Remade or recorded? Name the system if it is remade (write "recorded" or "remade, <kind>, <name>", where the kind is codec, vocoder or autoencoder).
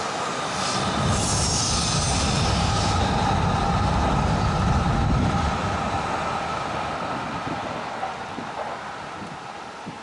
recorded